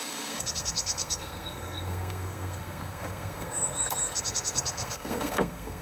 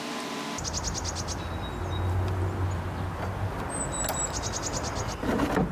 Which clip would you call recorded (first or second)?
second